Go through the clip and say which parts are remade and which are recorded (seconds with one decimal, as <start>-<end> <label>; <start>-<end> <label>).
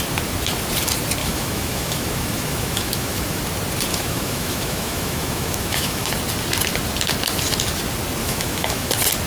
0.0-1.2 recorded; 1.2-3.4 remade; 3.4-3.9 recorded; 3.9-6.1 remade; 6.1-8.2 recorded; 8.2-8.9 remade; 8.9-9.3 recorded